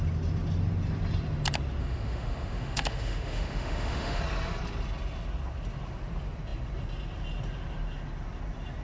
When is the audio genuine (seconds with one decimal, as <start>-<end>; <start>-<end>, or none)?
0.0-1.8; 4.2-8.8